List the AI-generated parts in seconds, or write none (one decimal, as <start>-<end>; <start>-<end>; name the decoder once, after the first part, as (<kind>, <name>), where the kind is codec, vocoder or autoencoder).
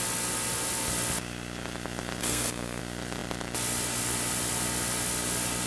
2.2-2.8 (codec, SNAC)